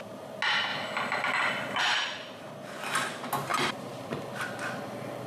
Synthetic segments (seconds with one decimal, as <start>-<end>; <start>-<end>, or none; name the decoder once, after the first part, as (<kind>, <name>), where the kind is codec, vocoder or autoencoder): 3.5-4.2 (vocoder, BigVGAN v2)

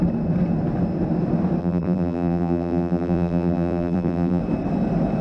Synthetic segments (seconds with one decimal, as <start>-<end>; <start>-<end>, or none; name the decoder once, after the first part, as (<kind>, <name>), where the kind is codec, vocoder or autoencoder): 1.6-4.4 (vocoder, BigVGAN v2)

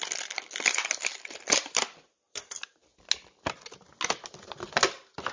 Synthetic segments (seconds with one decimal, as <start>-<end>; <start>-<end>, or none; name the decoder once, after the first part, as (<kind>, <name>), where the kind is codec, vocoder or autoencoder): none

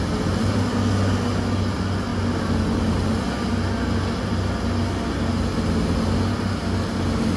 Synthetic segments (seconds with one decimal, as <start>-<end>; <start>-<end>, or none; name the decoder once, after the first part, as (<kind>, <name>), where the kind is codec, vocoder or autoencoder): none

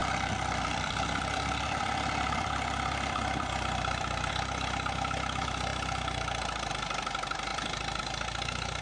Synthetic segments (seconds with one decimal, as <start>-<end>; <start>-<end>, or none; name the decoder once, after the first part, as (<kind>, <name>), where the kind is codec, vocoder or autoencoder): 0.0-4.3 (vocoder, BigVGAN v2); 7.5-8.0

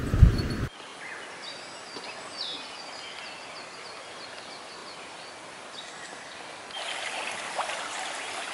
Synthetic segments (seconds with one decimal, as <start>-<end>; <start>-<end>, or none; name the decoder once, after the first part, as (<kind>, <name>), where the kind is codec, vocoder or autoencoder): none

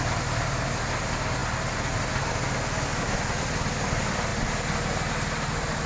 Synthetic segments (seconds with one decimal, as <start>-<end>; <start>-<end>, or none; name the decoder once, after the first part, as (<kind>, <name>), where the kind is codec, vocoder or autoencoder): none